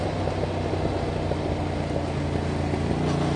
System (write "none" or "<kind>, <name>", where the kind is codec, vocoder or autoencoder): none